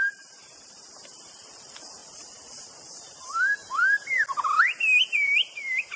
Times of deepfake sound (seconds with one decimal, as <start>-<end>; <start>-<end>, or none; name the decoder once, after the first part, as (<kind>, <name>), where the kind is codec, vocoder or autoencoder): 0.0-2.0 (vocoder, BigVGAN v2); 5.0-6.0